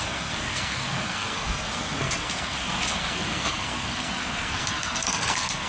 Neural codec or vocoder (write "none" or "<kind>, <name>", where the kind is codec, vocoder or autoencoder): codec, SNAC